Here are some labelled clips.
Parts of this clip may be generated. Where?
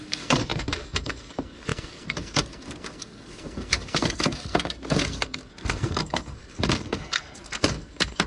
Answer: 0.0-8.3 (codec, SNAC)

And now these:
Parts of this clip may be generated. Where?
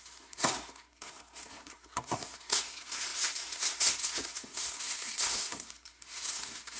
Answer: 0.0-6.8 (codec, SNAC)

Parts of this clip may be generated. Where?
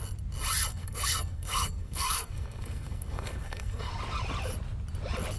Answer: 0.7-3.9 (codec, SNAC)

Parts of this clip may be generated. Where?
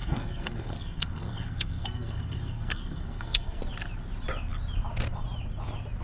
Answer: 0.0-3.6 (codec, SNAC)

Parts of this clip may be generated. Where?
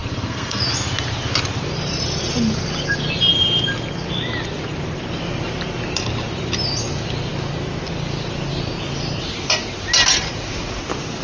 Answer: 0.0-0.6 (codec, SNAC)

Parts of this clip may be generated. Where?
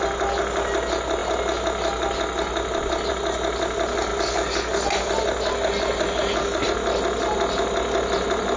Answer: none